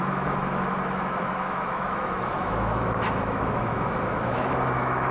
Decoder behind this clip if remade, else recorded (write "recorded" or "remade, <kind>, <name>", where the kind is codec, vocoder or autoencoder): remade, autoencoder, DAC-VAE